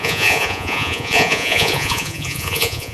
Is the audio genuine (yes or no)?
no